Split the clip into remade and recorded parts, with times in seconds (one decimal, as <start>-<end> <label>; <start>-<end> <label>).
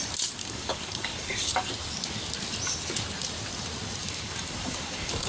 0.0-0.4 recorded; 0.4-1.7 remade; 1.7-4.0 recorded; 4.0-5.3 remade